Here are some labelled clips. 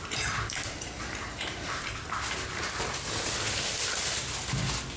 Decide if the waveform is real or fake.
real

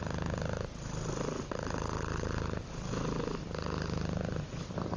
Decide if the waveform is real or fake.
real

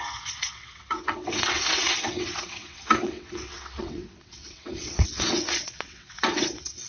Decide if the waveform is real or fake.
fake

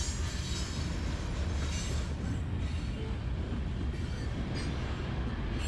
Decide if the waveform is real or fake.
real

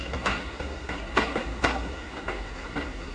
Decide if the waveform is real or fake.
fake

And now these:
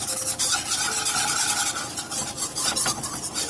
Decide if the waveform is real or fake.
real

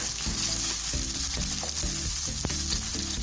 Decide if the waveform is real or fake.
real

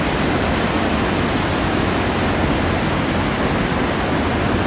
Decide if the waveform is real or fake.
real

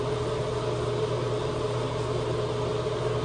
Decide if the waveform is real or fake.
real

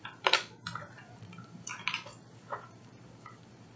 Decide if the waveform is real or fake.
fake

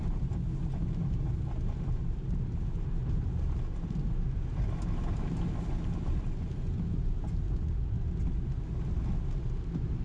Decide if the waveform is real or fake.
real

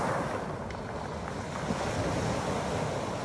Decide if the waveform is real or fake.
real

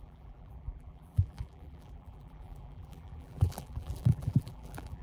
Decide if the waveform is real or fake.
fake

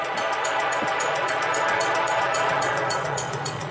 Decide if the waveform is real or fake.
fake